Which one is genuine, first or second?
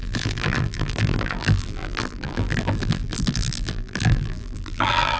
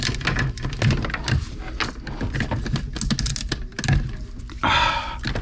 second